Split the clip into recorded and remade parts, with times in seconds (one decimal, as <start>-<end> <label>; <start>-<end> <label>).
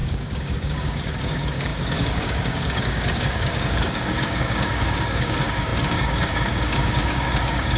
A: 0.0-7.8 remade